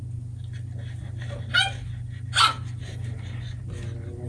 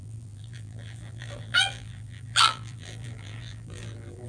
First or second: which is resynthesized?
second